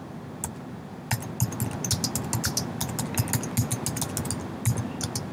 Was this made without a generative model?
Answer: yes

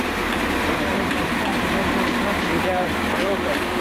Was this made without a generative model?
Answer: no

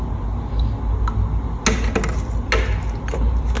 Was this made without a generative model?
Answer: yes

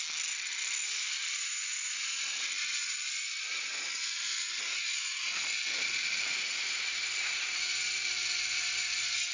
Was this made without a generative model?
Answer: yes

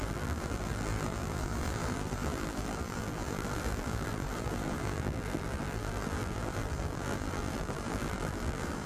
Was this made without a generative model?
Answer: no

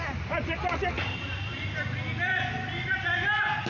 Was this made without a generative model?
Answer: no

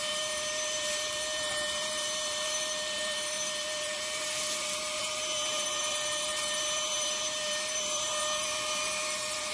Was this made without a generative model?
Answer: no